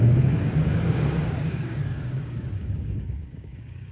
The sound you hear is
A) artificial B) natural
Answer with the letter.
A